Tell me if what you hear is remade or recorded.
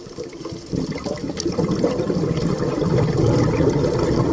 remade